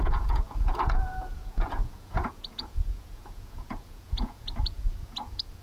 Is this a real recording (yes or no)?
no